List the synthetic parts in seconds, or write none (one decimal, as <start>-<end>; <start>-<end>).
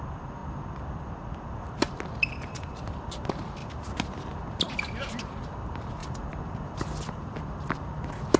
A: none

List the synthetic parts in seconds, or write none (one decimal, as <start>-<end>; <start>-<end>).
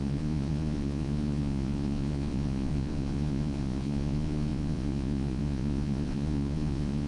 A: 0.0-7.1